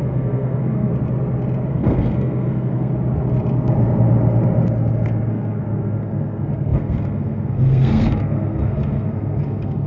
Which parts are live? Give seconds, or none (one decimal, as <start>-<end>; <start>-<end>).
0.9-1.7; 2.9-5.3